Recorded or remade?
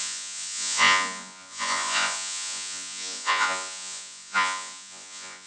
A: remade